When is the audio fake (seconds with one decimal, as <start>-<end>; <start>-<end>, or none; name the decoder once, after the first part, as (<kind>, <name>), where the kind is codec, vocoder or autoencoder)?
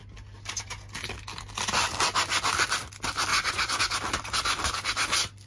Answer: 3.3-3.8 (vocoder, Vocos)